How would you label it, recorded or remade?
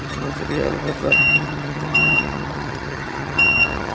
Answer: remade